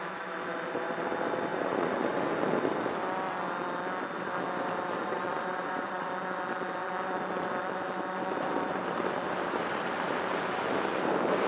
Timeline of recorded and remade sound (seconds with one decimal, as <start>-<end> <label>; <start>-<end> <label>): 0.0-1.5 recorded; 1.5-2.2 remade; 2.2-5.0 recorded; 5.0-6.1 remade; 6.1-11.5 recorded